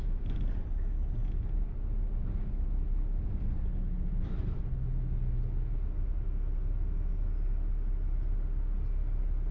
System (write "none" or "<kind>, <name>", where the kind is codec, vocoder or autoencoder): none